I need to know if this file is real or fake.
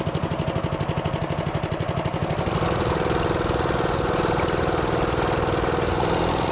real